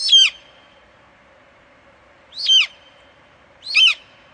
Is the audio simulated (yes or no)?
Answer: yes